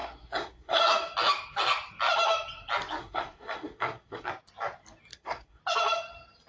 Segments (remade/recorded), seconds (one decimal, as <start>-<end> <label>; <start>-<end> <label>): 0.0-0.8 remade; 0.8-3.0 recorded; 3.0-4.3 remade; 4.3-5.1 recorded; 5.1-5.6 remade; 5.6-6.5 recorded